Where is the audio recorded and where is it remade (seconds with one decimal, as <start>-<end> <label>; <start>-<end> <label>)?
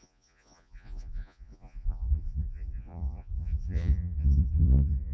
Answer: 0.0-5.1 remade